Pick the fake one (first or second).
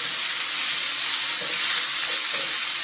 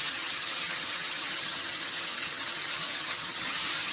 second